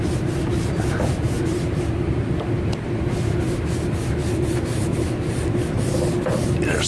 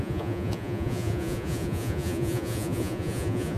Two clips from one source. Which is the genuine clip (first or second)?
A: first